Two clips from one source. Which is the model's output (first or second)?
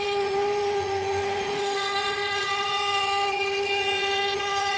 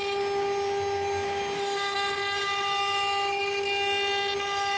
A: first